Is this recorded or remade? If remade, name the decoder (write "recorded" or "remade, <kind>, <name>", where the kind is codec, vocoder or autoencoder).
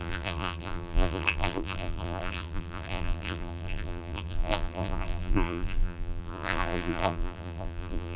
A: remade, vocoder, BigVGAN v2